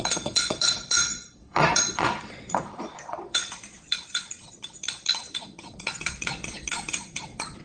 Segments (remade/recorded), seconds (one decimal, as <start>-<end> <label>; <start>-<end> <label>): 0.0-7.6 remade